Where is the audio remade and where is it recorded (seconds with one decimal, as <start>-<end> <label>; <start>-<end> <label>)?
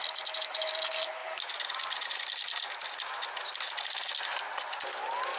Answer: 0.0-5.4 recorded